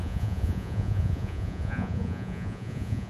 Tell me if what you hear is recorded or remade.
remade